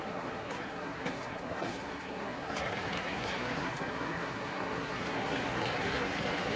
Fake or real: fake